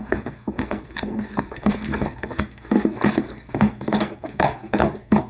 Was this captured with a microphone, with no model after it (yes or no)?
no